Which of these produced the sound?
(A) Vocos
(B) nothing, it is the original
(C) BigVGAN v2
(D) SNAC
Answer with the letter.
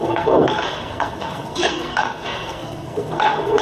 D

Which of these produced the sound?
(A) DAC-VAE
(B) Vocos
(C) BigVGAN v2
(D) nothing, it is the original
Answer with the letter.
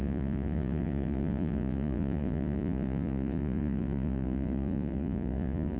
B